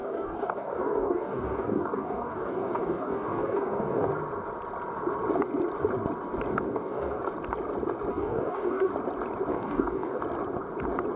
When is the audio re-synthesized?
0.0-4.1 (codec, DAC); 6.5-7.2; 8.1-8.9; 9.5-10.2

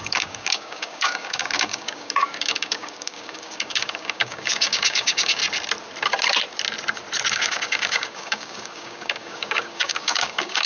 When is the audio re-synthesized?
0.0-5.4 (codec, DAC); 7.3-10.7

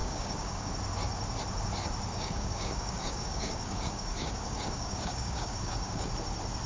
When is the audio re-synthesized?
0.0-0.7 (codec, DAC); 2.1-6.1